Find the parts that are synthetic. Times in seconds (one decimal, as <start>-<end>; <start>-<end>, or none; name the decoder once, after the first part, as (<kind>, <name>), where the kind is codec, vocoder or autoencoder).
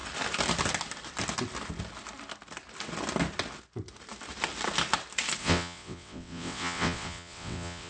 5.4-7.9 (vocoder, WaveNeXt)